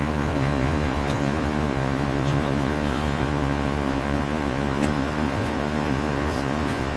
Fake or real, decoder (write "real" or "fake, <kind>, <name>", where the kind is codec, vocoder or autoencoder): fake, vocoder, Vocos